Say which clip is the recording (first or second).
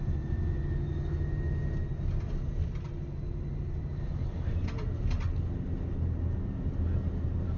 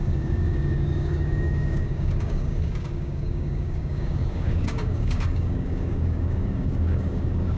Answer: first